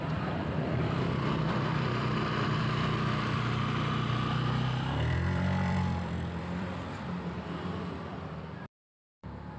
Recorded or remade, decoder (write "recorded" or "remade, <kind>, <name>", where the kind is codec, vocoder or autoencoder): remade, vocoder, BigVGAN v2